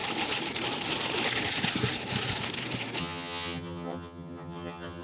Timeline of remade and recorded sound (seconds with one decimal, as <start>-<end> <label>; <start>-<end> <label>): 0.0-3.0 recorded; 3.0-5.0 remade